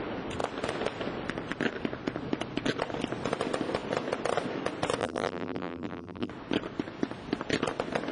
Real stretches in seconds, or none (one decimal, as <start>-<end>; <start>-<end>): 0.0-5.0; 6.3-8.1